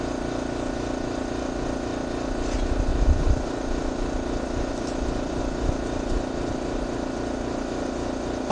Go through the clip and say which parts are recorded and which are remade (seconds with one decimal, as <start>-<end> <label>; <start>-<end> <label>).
0.0-2.9 recorded; 2.9-5.4 remade; 5.4-8.5 recorded